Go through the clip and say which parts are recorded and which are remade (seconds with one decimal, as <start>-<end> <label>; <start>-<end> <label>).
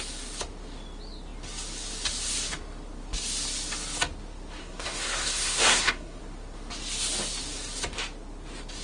0.0-4.6 recorded; 4.6-6.2 remade; 6.2-8.8 recorded